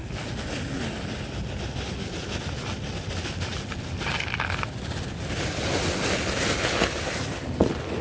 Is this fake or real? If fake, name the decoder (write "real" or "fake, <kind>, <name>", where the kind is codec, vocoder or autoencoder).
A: real